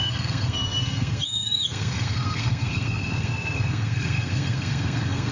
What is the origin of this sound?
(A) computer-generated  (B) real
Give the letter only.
A